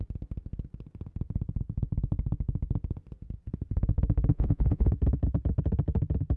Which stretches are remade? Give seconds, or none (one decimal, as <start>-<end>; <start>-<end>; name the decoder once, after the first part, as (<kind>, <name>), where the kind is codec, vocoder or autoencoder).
4.3-4.9 (vocoder, Vocos)